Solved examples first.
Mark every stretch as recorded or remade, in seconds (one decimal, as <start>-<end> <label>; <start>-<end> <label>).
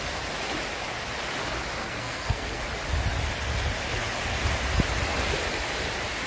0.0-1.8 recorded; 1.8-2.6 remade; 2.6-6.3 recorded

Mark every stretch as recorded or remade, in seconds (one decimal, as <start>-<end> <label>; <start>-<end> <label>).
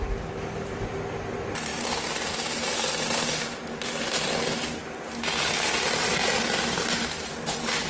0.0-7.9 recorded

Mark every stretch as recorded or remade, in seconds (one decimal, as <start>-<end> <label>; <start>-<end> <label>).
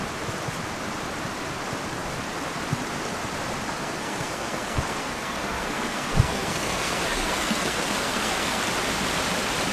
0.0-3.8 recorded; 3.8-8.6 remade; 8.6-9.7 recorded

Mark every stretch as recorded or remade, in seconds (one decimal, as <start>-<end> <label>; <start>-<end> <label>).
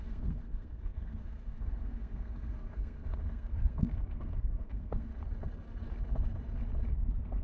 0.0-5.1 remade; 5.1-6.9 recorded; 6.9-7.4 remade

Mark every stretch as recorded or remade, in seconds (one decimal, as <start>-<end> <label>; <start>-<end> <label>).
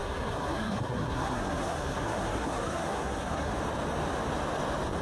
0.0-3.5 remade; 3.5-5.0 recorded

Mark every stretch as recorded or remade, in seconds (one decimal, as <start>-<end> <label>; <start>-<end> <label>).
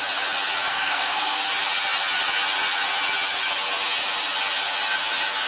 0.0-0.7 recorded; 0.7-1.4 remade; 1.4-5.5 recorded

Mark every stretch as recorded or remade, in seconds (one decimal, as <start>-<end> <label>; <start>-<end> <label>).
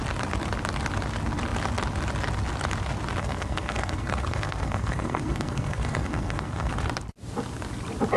0.0-3.2 recorded; 3.2-6.7 remade; 6.7-8.2 recorded